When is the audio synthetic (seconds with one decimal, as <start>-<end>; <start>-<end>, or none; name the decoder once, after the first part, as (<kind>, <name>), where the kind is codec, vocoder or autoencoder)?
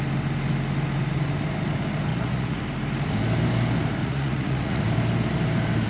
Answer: 2.1-2.6 (vocoder, Vocos); 4.0-4.8